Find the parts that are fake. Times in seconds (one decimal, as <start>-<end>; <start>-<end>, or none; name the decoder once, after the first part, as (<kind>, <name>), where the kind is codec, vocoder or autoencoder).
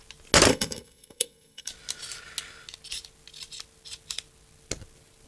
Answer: 0.5-1.7 (codec, SNAC)